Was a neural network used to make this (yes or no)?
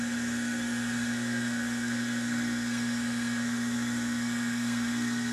yes